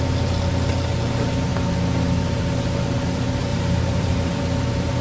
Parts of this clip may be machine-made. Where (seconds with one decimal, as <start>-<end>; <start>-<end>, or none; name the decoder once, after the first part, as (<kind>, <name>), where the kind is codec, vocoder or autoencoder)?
3.5-4.4 (vocoder, BigVGAN v2)